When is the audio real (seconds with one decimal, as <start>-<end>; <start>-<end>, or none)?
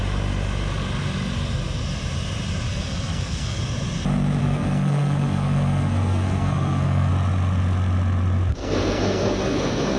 0.0-2.7; 3.6-4.4; 7.1-8.5